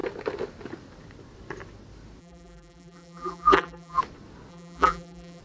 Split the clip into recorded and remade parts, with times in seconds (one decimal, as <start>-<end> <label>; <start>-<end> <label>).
0.0-2.2 recorded; 2.2-4.0 remade; 4.0-4.5 recorded; 4.5-5.4 remade